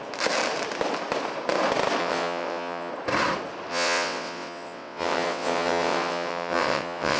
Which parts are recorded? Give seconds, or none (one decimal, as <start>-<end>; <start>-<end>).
0.0-2.0; 2.9-3.7